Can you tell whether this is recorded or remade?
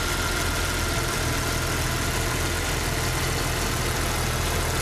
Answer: recorded